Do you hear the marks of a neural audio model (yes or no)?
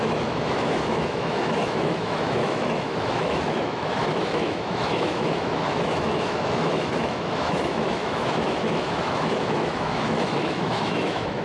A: yes